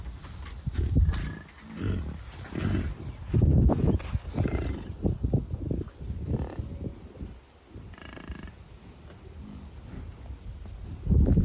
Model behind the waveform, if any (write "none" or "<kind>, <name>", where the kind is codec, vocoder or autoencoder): none